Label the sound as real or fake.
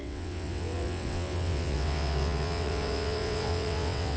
fake